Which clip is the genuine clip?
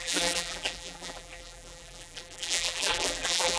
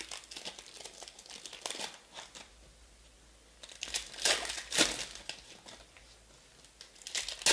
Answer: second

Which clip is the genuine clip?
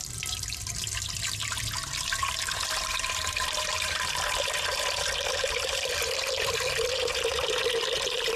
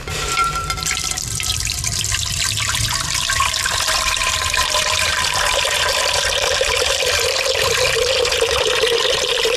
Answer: first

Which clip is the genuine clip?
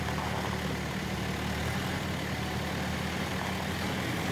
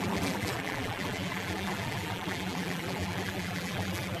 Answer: first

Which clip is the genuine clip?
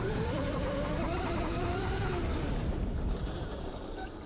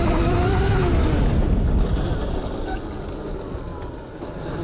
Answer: second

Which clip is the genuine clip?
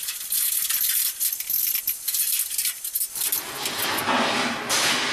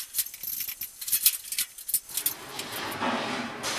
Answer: second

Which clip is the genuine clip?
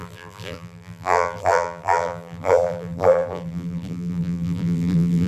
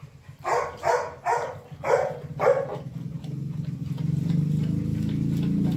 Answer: second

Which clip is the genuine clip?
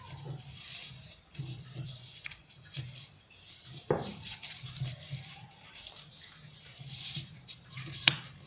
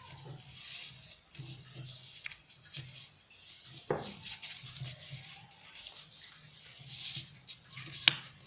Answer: second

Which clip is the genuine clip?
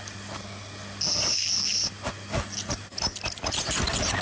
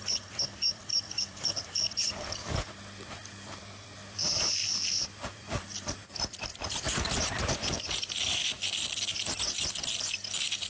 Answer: first